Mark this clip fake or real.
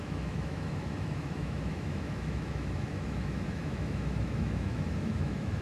fake